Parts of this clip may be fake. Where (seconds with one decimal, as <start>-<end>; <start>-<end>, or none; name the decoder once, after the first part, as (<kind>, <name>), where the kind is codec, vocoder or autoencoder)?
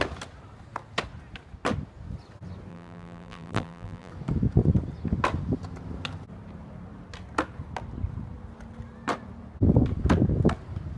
2.7-4.1 (vocoder, BigVGAN v2)